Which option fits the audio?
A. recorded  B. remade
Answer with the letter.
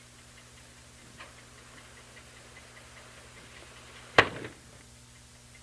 A